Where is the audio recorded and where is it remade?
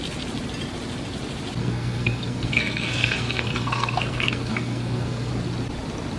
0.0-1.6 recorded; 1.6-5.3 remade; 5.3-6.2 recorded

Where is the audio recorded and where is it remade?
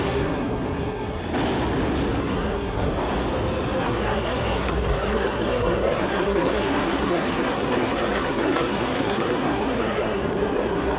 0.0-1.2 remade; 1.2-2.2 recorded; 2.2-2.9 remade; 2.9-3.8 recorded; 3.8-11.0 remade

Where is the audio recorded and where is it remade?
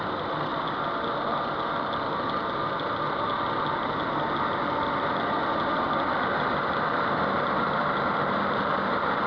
0.0-9.3 recorded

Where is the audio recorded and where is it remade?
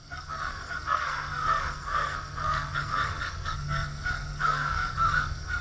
0.0-5.6 remade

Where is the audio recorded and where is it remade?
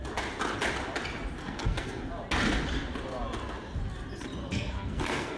0.0-1.4 recorded; 1.4-2.0 remade; 2.0-4.4 recorded; 4.4-5.4 remade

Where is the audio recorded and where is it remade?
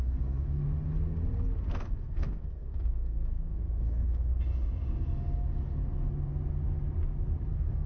0.0-0.6 remade; 0.6-1.7 recorded; 1.7-4.3 remade; 4.3-7.5 recorded; 7.5-7.9 remade